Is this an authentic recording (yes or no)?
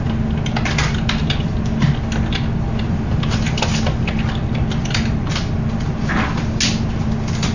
yes